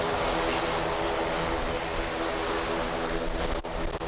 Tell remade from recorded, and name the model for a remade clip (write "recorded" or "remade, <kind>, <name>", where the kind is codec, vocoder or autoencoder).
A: recorded